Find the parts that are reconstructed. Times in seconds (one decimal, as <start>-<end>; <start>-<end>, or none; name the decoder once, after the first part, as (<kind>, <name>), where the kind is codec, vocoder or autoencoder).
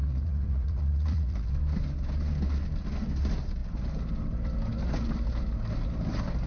0.0-1.5 (vocoder, Vocos)